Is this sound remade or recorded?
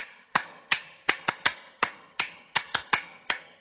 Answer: remade